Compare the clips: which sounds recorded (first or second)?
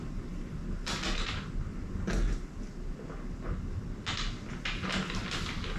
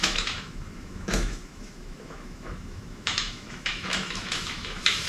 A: first